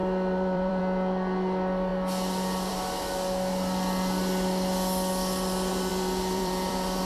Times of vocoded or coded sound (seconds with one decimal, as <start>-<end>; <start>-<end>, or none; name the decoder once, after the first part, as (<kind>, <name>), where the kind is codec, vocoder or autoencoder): 0.0-0.8 (vocoder, BigVGAN v2); 5.9-7.0